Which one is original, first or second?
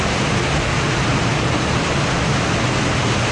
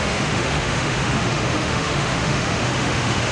first